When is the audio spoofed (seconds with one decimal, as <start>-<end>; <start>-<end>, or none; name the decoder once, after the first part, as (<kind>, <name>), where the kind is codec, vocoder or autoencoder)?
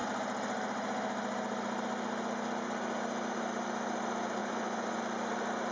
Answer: 4.4-5.0 (vocoder, Vocos)